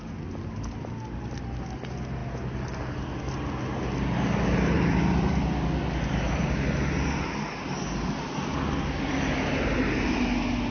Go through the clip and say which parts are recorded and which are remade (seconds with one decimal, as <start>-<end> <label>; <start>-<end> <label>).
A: 0.0-10.7 recorded